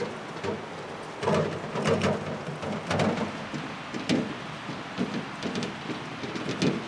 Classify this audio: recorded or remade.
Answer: recorded